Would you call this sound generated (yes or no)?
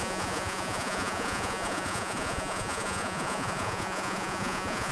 yes